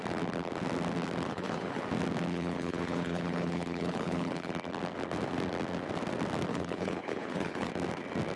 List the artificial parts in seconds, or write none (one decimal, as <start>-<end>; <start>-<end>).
1.3-1.8; 2.3-4.5; 6.5-7.7